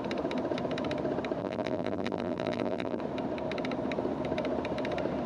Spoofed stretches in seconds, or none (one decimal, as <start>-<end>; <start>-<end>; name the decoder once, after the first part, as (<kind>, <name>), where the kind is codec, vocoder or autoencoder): 1.4-3.0 (vocoder, BigVGAN v2)